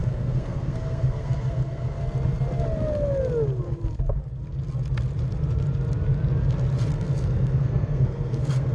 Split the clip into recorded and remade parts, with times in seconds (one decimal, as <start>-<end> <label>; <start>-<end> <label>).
0.0-2.0 remade; 2.0-6.9 recorded; 6.9-8.7 remade